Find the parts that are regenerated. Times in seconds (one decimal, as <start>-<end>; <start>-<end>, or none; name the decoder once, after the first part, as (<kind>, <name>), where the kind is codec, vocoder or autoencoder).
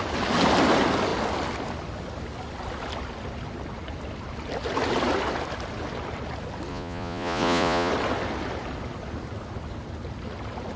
6.7-7.9 (vocoder, Vocos)